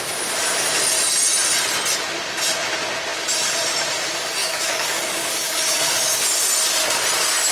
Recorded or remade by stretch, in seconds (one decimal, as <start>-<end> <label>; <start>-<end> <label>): 0.0-4.4 recorded; 4.4-6.4 remade; 6.4-7.5 recorded